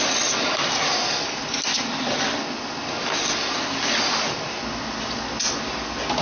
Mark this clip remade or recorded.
recorded